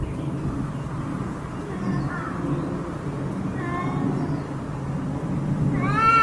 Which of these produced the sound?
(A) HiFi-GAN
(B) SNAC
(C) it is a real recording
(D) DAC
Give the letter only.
C